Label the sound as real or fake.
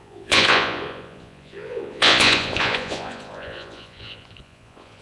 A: fake